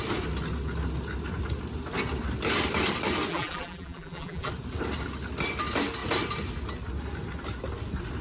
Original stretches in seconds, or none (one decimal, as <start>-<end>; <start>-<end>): 0.0-3.3; 4.5-8.2